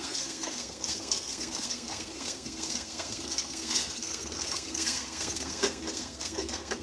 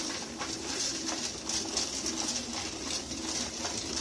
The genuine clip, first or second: second